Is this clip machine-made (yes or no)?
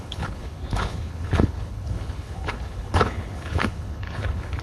yes